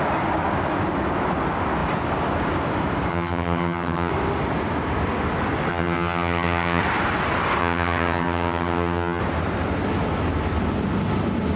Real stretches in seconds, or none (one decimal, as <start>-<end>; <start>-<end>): 0.0-3.1; 4.1-5.7; 6.8-7.6; 9.2-11.6